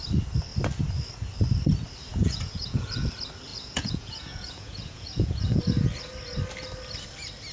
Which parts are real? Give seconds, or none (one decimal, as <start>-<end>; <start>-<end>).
0.0-2.2; 3.1-3.5; 5.6-7.5